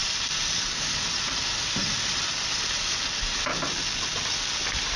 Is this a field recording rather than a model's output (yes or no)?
yes